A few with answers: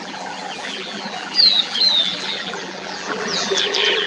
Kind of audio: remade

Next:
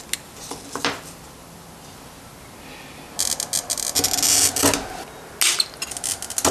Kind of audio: recorded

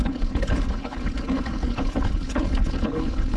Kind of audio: remade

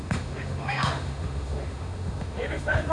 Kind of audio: remade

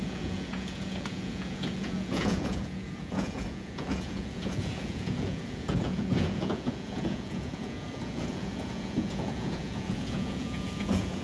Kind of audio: remade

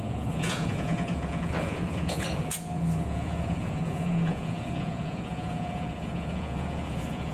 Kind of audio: remade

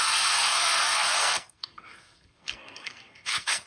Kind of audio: remade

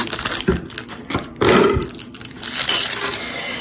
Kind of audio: recorded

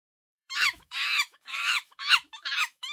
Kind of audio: remade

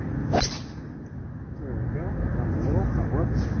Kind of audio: recorded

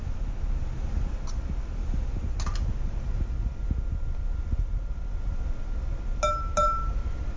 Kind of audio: recorded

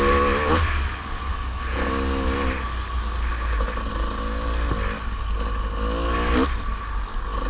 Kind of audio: recorded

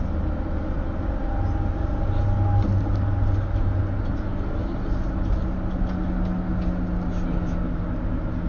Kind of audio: recorded